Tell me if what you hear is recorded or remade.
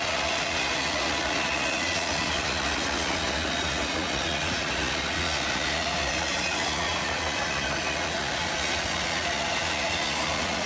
remade